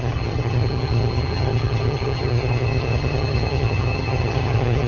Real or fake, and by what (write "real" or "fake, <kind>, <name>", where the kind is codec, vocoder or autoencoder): fake, vocoder, HiFi-GAN